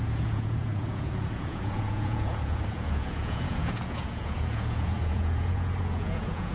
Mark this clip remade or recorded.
remade